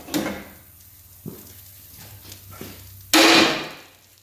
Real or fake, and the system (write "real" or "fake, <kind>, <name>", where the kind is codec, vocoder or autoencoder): real